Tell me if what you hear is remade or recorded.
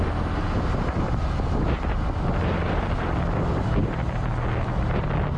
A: recorded